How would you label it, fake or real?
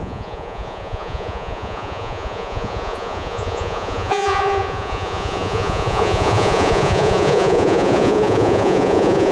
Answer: fake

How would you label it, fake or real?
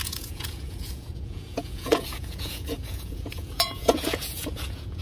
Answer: fake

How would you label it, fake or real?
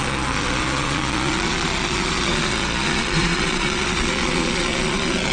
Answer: fake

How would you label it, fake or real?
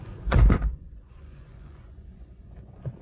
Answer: fake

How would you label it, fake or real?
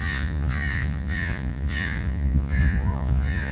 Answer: fake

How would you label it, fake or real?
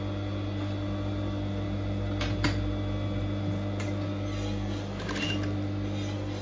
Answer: real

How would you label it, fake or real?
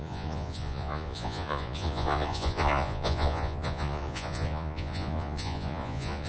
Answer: fake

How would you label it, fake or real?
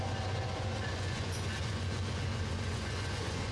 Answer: fake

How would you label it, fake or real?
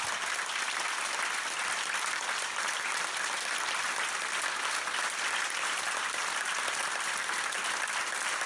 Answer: real